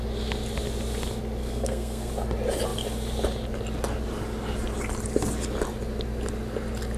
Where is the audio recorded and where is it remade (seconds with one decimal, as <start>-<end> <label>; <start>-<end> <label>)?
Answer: 0.0-1.4 recorded; 1.4-2.1 remade; 2.1-7.0 recorded